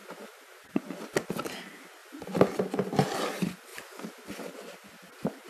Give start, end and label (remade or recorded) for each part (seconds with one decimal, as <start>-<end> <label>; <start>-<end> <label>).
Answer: 0.0-5.5 recorded

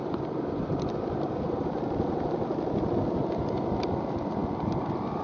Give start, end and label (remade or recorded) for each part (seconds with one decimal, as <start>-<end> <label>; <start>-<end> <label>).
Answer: 0.0-5.2 recorded